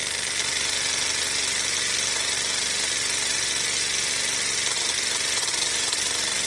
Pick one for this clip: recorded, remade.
recorded